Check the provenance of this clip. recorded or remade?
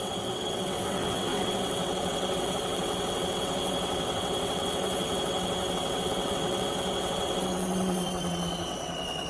remade